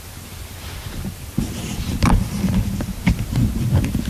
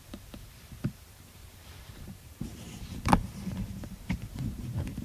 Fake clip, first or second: second